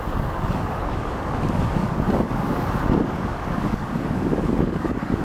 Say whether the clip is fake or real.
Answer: fake